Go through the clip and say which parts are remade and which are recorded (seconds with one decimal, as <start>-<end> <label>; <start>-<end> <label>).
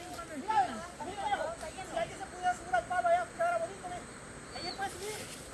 0.0-5.5 recorded